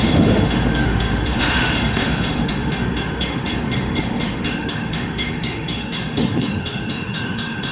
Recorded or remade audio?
remade